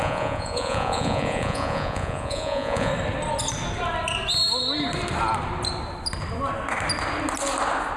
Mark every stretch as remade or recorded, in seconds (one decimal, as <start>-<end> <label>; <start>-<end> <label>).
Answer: 0.0-2.9 remade; 2.9-8.0 recorded